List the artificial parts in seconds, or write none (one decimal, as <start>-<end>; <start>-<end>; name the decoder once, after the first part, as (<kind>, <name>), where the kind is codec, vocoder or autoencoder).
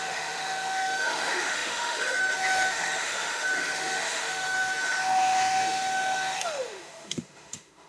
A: 0.0-7.9 (autoencoder, DAC-VAE)